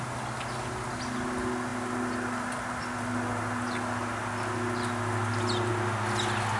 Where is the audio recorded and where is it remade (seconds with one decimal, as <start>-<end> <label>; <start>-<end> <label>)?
0.0-6.6 recorded